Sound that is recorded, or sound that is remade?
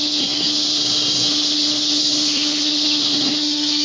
remade